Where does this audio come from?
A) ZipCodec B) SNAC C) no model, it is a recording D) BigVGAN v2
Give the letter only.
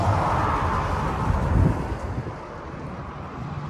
C